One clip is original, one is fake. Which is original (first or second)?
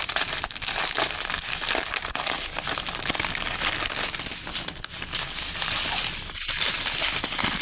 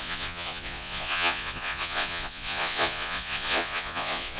first